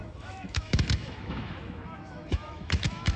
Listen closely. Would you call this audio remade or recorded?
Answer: remade